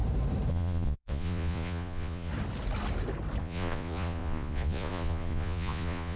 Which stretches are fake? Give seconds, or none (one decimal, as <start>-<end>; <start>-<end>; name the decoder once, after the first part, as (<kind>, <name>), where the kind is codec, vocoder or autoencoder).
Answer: 0.5-2.3 (vocoder, Vocos); 3.4-6.2